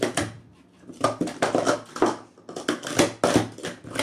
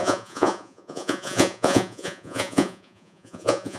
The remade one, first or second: second